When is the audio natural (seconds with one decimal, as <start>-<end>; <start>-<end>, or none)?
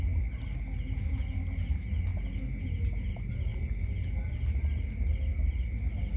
0.0-3.5; 4.3-6.2